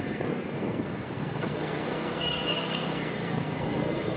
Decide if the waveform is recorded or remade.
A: remade